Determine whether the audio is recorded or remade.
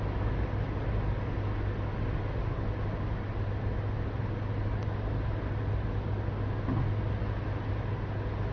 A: recorded